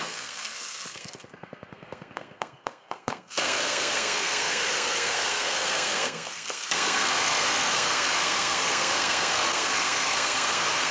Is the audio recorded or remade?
remade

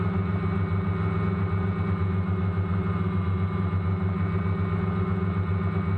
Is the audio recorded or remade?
recorded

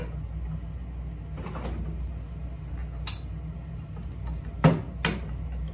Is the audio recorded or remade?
recorded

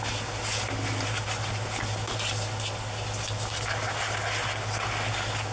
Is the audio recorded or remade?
recorded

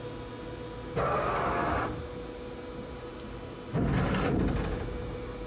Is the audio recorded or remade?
recorded